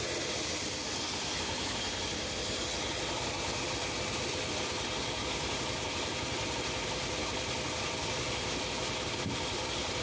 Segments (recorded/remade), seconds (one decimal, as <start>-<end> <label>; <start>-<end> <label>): 0.0-10.0 recorded